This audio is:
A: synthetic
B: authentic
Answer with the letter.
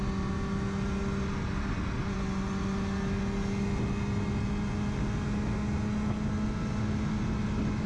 B